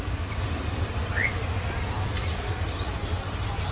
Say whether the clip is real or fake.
real